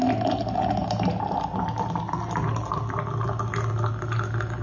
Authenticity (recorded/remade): recorded